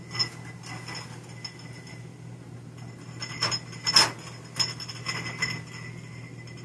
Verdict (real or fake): real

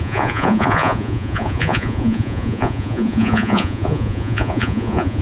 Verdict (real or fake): fake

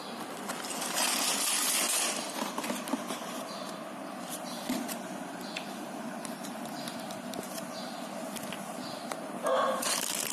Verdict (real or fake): real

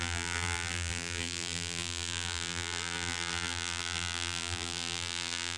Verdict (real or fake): fake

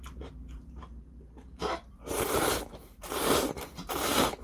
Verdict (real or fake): fake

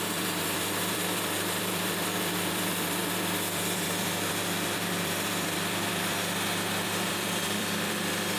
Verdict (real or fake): fake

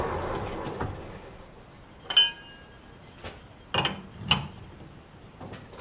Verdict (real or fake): real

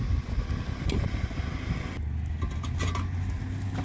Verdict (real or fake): real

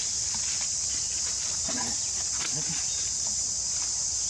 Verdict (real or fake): real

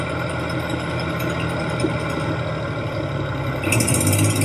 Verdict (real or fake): real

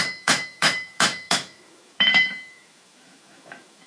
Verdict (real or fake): fake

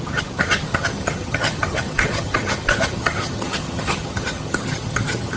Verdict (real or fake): fake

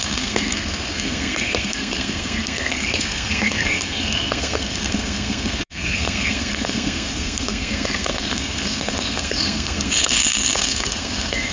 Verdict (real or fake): fake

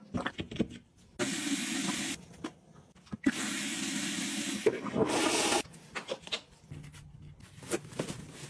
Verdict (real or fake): real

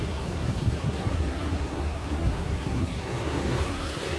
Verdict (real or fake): fake